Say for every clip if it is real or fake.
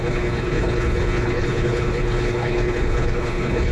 fake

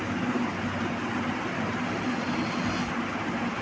real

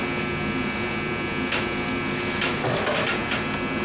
real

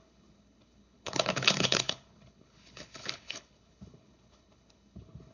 fake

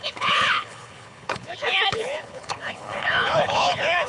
fake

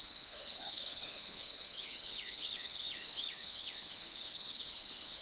fake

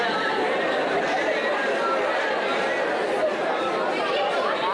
real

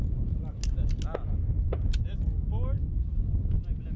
real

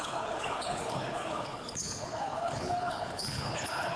fake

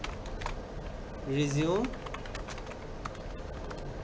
real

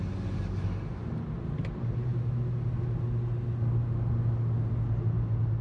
real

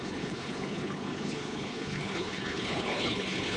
fake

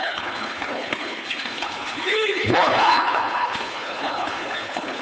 fake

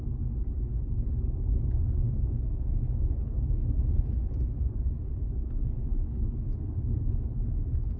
fake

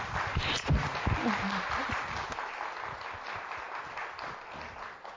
real